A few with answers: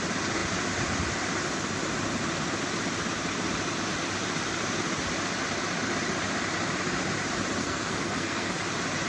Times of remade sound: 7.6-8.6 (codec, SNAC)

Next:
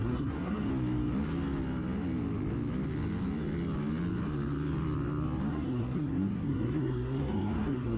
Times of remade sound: 0.0-0.7 (codec, SNAC); 5.5-8.0